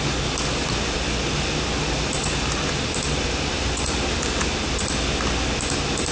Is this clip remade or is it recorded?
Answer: recorded